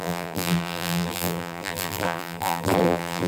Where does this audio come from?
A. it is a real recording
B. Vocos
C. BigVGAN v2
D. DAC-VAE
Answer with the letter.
C